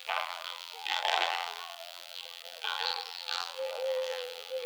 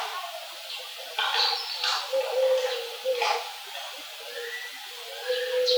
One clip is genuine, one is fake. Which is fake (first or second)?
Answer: first